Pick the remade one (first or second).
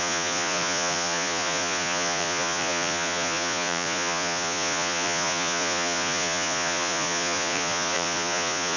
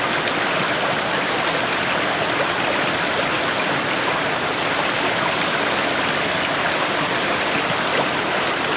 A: first